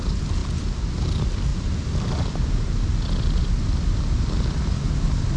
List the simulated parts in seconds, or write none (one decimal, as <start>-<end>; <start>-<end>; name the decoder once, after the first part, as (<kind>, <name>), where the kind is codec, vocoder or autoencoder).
none